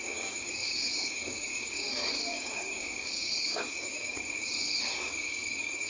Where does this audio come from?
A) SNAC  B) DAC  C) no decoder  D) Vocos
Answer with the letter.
B